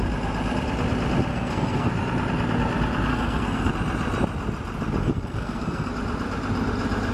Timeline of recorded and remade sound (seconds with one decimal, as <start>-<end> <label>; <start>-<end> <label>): 0.0-1.3 recorded; 1.3-1.9 remade; 1.9-3.1 recorded; 3.1-3.7 remade; 3.7-5.0 recorded; 5.0-5.9 remade; 5.9-7.1 recorded